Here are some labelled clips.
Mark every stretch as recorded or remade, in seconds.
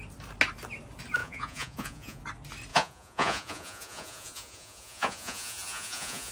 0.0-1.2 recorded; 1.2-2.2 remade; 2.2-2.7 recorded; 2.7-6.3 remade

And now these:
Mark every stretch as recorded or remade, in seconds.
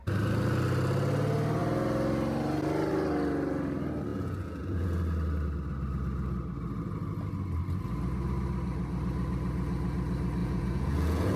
0.0-4.1 recorded; 4.1-5.0 remade; 5.0-10.4 recorded; 10.4-11.4 remade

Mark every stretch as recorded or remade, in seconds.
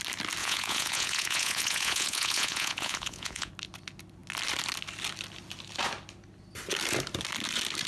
0.0-0.4 recorded; 0.4-3.5 remade; 3.5-7.9 recorded